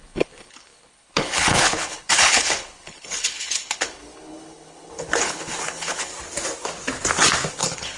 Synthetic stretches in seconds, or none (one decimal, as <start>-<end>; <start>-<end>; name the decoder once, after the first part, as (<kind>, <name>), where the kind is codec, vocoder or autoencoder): 0.0-6.1 (codec, HILCodec); 7.5-8.0